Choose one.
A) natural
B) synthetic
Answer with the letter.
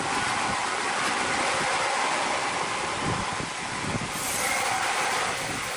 A